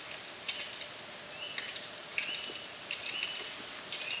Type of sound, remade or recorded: recorded